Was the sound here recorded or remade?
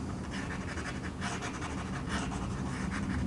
recorded